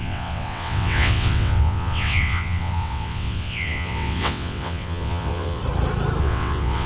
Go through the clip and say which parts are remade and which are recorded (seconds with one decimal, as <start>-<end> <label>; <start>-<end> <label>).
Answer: 0.0-5.6 remade; 5.6-6.2 recorded; 6.2-6.9 remade